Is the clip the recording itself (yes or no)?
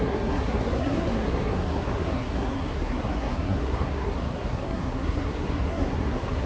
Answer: no